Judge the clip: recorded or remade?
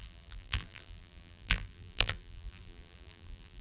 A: remade